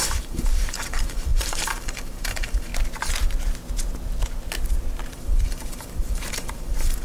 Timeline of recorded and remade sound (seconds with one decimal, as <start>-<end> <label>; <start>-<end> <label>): 0.0-2.7 remade; 2.7-5.1 recorded; 5.1-7.0 remade